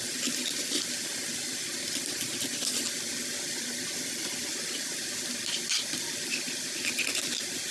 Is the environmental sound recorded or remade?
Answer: recorded